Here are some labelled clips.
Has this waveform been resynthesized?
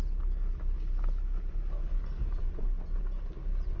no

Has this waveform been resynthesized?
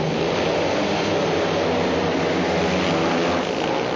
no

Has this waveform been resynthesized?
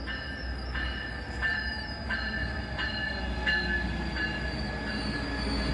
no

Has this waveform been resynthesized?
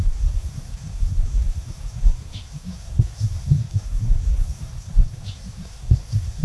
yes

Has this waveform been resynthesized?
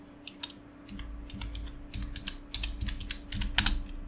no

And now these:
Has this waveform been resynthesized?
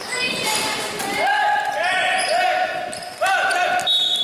no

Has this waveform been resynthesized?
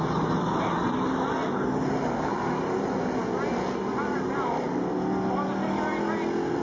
no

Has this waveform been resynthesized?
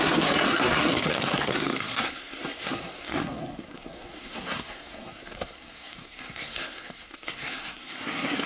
yes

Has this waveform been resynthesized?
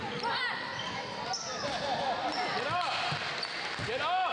no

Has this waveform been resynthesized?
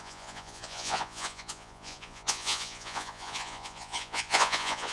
yes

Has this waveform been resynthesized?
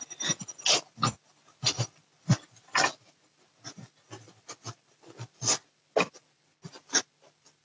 no